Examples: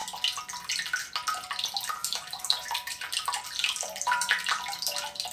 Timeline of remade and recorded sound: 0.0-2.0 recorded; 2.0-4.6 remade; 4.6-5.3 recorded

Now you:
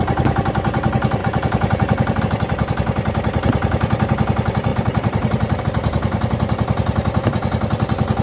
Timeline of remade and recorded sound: 0.0-1.2 recorded; 1.2-2.2 remade; 2.2-4.7 recorded; 4.7-5.6 remade; 5.6-8.2 recorded

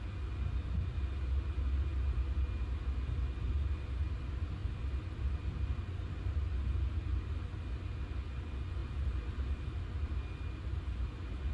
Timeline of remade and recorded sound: 0.0-4.6 recorded; 4.6-6.3 remade; 6.3-8.8 recorded; 8.8-9.7 remade; 9.7-11.5 recorded

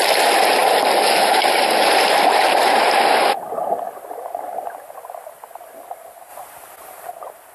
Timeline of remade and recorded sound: 0.0-7.5 recorded

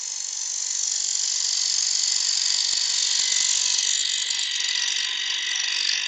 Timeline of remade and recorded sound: 0.0-1.1 recorded; 1.1-2.6 remade; 2.6-6.1 recorded

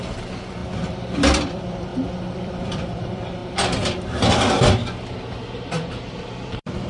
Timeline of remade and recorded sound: 0.0-3.4 remade; 3.4-5.5 recorded; 5.5-6.9 remade